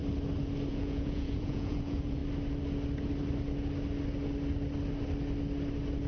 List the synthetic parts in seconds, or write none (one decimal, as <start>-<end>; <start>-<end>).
0.7-2.2